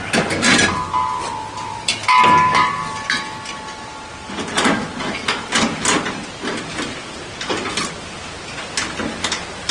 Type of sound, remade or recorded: recorded